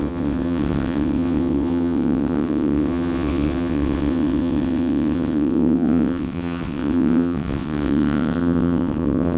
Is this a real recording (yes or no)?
no